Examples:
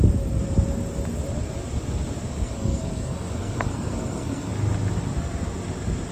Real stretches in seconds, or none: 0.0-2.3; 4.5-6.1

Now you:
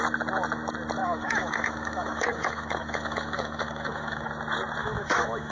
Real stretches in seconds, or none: 0.0-1.0; 4.3-4.8

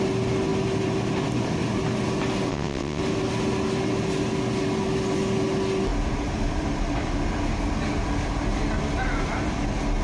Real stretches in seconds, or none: 0.0-2.5; 3.0-10.0